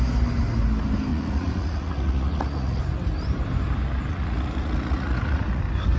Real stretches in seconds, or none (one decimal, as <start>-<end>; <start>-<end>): 0.0-1.1; 2.8-4.1; 5.6-6.0